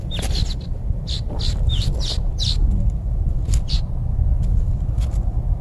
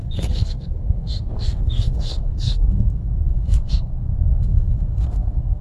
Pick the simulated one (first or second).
second